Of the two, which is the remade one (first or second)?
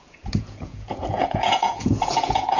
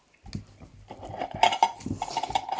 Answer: first